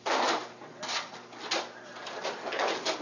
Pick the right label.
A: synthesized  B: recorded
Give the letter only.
B